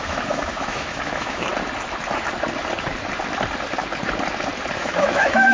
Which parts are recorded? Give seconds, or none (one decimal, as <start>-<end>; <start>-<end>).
1.5-4.8